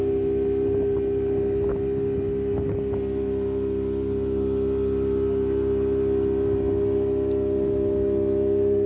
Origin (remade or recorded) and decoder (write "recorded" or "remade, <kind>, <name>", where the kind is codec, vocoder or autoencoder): recorded